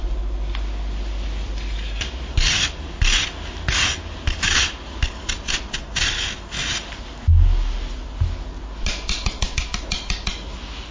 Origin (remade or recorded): recorded